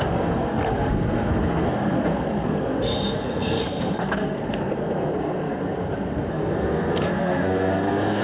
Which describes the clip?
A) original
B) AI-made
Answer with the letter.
B